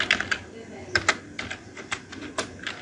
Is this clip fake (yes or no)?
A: no